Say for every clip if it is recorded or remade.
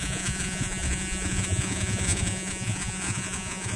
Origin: remade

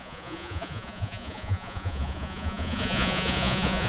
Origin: remade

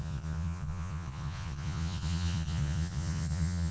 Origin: remade